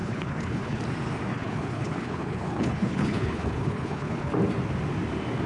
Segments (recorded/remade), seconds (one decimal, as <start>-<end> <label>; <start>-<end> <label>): 0.0-0.8 remade; 0.8-1.3 recorded; 1.3-4.3 remade; 4.3-5.5 recorded